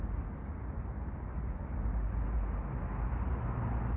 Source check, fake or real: real